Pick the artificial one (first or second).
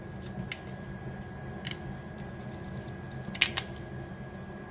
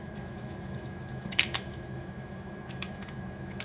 second